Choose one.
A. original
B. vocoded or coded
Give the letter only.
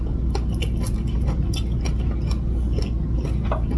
A